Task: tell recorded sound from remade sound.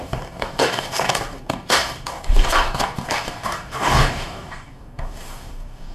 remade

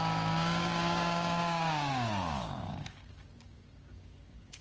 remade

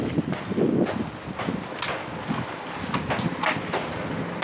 recorded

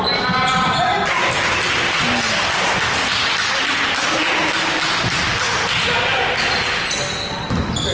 recorded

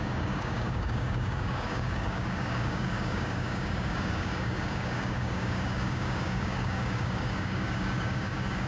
remade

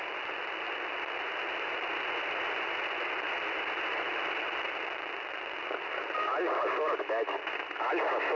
recorded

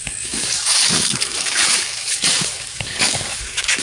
remade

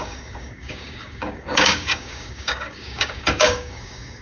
remade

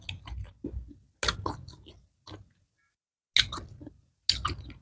recorded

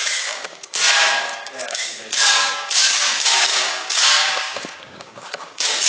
remade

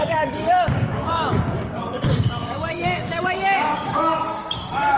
remade